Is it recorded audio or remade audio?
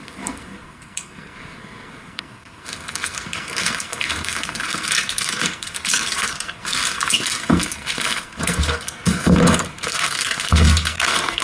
remade